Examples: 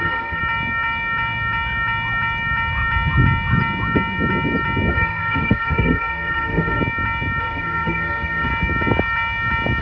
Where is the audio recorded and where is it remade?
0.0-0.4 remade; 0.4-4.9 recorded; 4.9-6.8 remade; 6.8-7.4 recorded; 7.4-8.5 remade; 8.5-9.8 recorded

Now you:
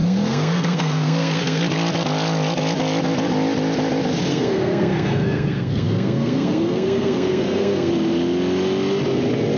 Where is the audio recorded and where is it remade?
0.0-1.6 remade; 1.6-4.3 recorded; 4.3-7.9 remade; 7.9-9.6 recorded

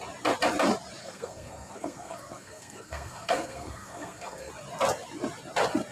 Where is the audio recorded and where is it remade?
0.0-1.0 recorded; 1.0-4.5 remade; 4.5-5.9 recorded

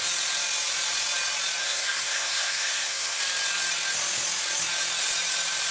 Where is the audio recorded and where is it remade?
0.0-1.6 recorded; 1.6-3.2 remade; 3.2-5.7 recorded